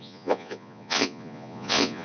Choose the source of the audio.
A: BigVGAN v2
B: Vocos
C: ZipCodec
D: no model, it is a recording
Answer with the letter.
B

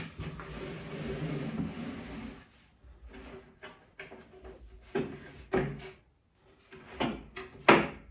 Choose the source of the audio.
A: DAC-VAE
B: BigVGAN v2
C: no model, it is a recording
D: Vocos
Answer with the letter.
C